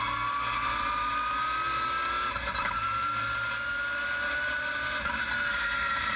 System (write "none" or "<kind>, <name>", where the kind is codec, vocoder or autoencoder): none